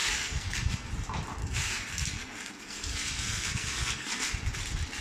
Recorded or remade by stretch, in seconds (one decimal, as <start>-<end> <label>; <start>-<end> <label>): 0.0-0.9 remade; 0.9-1.4 recorded; 1.4-4.3 remade; 4.3-5.0 recorded